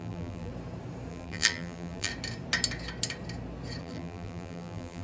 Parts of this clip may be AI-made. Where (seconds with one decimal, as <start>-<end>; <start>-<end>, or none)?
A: 0.0-0.5; 1.1-2.1; 3.8-5.0

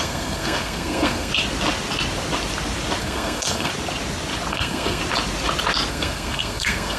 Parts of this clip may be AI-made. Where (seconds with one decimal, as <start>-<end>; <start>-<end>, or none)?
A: 0.0-1.3; 3.0-3.7; 4.5-5.0; 5.9-7.0

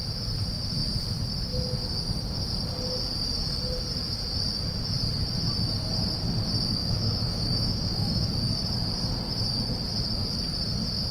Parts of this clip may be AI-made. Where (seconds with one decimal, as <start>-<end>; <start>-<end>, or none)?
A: 6.8-8.3

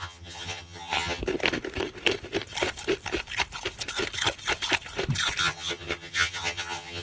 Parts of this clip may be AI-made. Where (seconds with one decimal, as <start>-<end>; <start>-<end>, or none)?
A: 0.0-1.2; 5.4-7.0

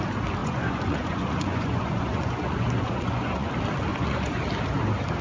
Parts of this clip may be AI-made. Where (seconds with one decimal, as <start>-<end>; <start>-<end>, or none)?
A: 0.4-3.5; 3.9-4.4

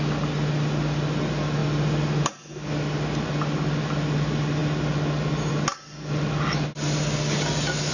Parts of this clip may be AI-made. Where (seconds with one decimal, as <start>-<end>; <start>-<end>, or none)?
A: none